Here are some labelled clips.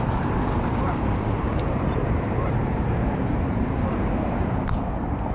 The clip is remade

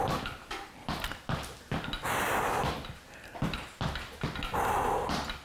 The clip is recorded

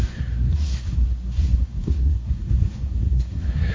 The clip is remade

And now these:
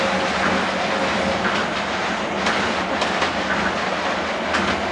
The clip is recorded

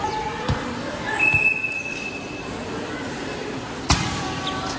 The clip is recorded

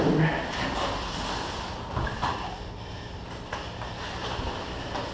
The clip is recorded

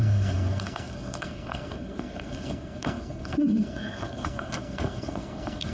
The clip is remade